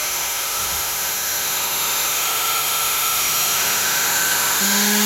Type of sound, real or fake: fake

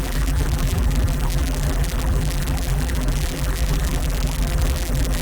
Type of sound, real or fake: fake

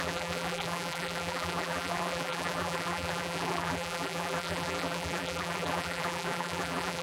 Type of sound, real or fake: fake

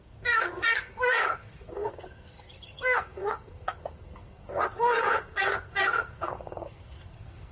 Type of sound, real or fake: fake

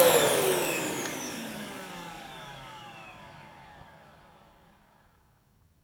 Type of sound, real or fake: fake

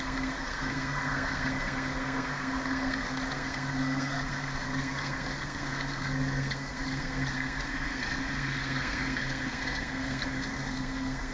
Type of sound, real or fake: fake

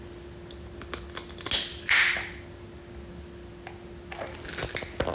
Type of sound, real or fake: real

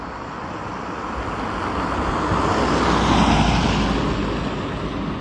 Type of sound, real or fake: real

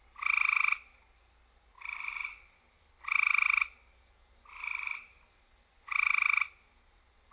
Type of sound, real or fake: real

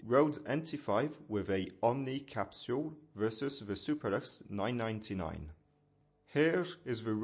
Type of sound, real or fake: real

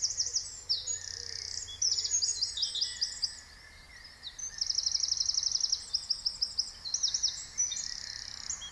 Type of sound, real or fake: real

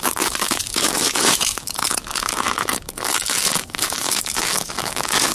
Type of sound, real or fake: fake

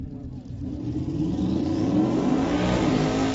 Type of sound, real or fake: real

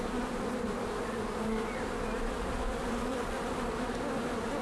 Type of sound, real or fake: real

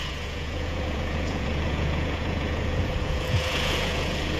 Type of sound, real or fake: fake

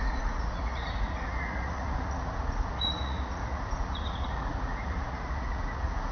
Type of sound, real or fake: fake